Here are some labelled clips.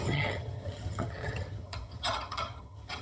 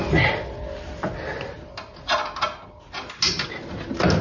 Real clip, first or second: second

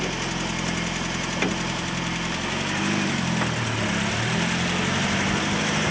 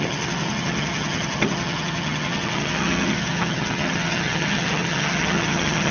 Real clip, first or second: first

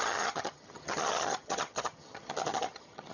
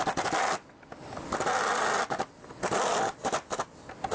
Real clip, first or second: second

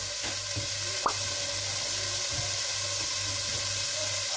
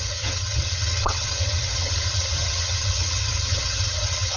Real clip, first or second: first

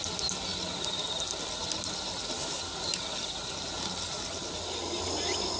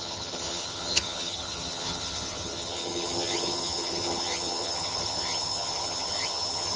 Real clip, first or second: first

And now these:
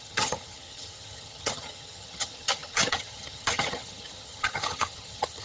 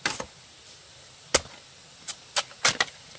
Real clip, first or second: second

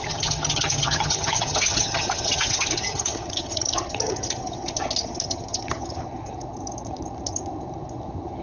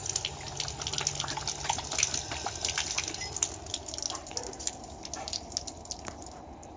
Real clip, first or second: second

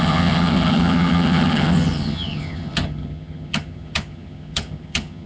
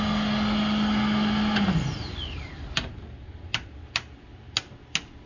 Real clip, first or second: second